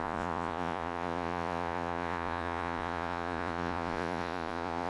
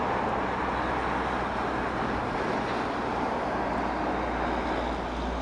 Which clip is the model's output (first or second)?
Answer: first